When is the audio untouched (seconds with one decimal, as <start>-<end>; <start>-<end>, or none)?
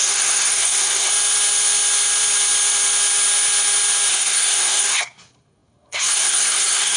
1.1-4.1